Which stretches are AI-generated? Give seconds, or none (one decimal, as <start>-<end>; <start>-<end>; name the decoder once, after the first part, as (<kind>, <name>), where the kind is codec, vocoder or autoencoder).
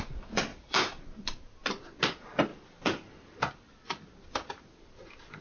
0.5-1.0 (vocoder, BigVGAN v2)